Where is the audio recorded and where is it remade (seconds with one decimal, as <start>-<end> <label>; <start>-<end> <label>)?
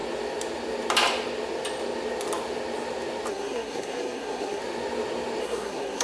0.0-3.3 recorded; 3.3-4.6 remade; 4.6-5.4 recorded; 5.4-6.0 remade